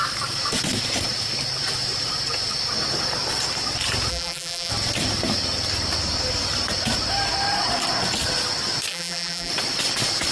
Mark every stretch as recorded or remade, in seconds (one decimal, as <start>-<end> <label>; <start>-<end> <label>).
0.0-4.1 recorded; 4.1-4.7 remade; 4.7-8.9 recorded; 8.9-9.5 remade; 9.5-10.3 recorded